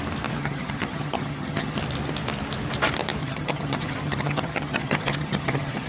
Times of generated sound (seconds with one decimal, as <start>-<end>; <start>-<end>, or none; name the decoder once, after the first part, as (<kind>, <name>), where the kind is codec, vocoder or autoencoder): 0.4-1.8 (vocoder, HiFi-GAN); 3.2-5.9